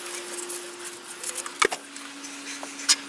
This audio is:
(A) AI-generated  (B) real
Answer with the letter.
B